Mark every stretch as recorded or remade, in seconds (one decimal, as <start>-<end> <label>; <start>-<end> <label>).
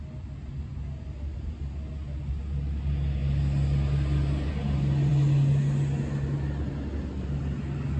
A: 0.0-8.0 recorded